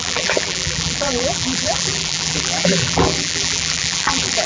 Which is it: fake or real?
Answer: fake